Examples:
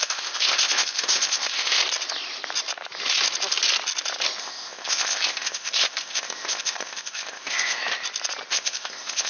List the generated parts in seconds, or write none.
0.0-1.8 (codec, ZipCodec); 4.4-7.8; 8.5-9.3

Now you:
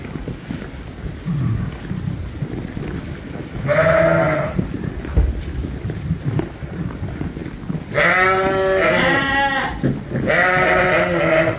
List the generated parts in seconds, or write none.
none

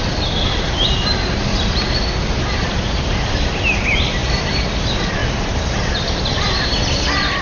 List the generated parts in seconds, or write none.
none

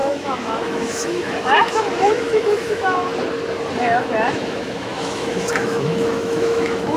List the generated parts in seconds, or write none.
0.0-3.1 (autoencoder, DAC-VAE); 3.8-7.0

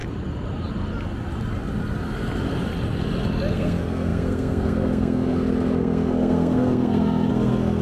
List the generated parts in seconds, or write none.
3.5-7.8 (codec, SNAC)

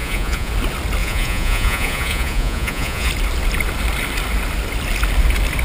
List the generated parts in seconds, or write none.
0.0-0.5 (vocoder, Vocos); 1.0-3.1

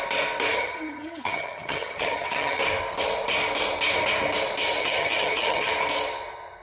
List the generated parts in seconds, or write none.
0.5-2.6 (vocoder, HiFi-GAN); 4.8-5.7

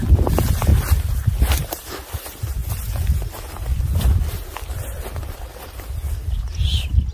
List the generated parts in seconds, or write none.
2.6-3.8 (vocoder, BigVGAN v2)